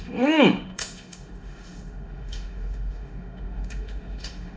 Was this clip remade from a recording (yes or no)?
yes